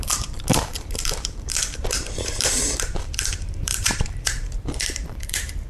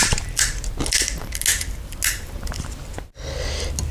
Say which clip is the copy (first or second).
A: first